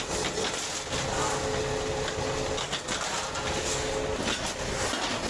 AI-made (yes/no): no